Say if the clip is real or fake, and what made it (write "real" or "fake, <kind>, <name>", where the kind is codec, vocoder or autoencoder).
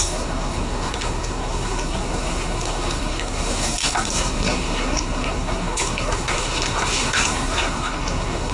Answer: fake, codec, SNAC